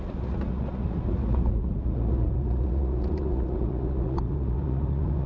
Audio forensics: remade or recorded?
remade